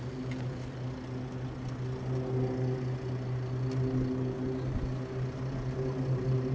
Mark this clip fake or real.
real